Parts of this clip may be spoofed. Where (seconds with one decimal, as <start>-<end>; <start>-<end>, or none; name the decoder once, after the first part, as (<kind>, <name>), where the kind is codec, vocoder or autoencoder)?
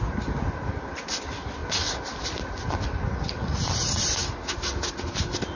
none